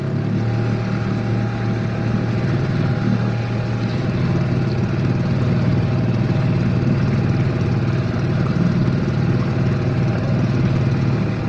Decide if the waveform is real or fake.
real